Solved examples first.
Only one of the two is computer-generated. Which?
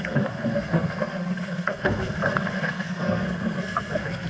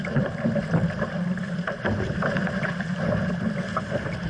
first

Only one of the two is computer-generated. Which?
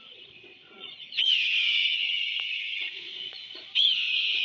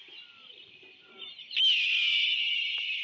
first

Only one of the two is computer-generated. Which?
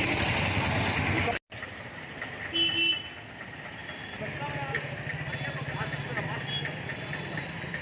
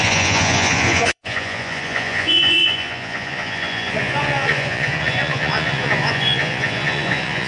second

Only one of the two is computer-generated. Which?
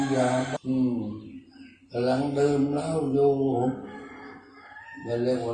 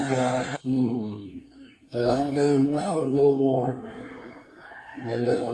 second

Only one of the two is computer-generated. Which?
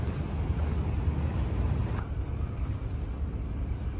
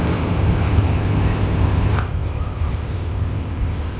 second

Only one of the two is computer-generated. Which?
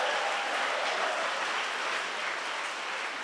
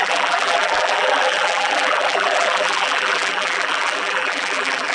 second